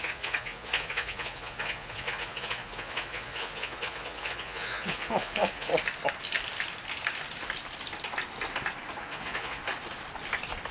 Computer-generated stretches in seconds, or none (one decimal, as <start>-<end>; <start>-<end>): 0.0-5.7; 9.0-9.6

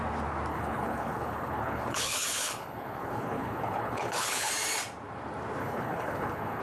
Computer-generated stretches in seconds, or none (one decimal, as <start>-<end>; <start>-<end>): 0.5-4.5; 5.6-6.6